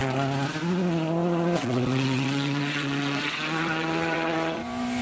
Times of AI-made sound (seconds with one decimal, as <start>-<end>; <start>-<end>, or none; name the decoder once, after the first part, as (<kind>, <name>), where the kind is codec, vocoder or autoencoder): 1.6-4.6 (vocoder, WaveNeXt)